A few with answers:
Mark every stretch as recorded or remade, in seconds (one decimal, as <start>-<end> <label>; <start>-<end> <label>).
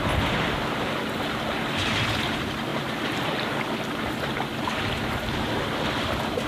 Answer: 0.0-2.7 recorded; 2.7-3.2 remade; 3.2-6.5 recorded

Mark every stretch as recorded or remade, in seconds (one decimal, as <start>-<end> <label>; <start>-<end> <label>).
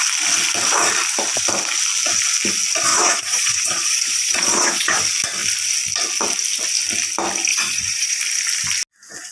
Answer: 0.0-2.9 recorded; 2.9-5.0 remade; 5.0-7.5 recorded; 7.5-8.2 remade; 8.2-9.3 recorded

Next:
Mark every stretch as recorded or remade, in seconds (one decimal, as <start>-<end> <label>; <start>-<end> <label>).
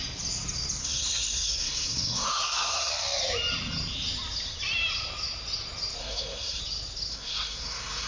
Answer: 0.0-0.8 recorded; 0.8-2.9 remade; 2.9-6.0 recorded; 6.0-6.6 remade; 6.6-7.1 recorded; 7.1-8.1 remade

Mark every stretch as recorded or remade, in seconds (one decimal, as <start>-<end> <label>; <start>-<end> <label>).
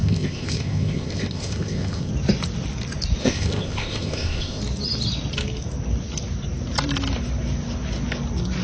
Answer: 0.0-2.1 remade; 2.1-3.2 recorded; 3.2-4.6 remade; 4.6-8.6 recorded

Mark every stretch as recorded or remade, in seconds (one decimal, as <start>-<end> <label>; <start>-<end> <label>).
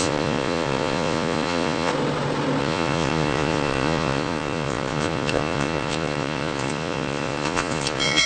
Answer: 0.0-1.9 remade; 1.9-2.6 recorded; 2.6-8.3 remade